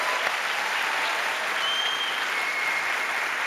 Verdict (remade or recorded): recorded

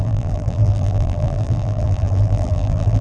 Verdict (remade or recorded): remade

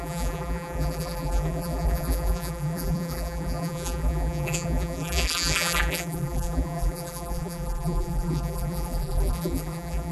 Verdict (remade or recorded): remade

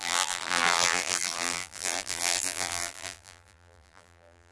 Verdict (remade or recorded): remade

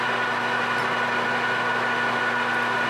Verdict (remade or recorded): recorded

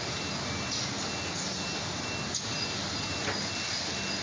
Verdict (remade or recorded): recorded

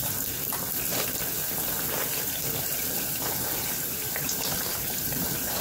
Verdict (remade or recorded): remade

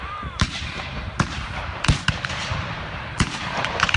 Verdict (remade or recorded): remade